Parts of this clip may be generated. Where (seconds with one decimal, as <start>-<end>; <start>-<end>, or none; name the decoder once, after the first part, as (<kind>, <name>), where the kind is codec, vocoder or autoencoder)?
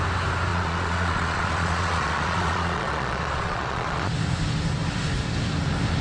0.5-4.1 (vocoder, Vocos)